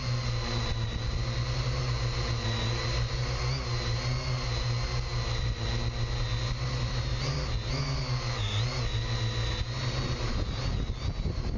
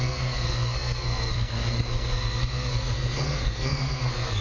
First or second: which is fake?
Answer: second